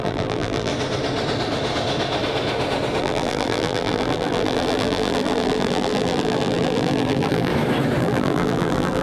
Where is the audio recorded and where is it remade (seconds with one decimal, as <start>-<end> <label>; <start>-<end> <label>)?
0.0-0.7 remade; 0.7-3.0 recorded; 3.0-7.5 remade; 7.5-8.0 recorded; 8.0-9.0 remade